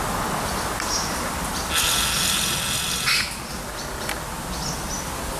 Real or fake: real